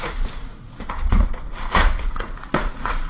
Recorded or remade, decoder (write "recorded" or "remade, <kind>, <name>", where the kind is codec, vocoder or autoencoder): remade, vocoder, Vocos